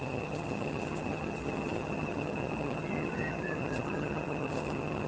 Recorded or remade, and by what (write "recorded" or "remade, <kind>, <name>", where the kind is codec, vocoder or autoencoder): remade, vocoder, HiFi-GAN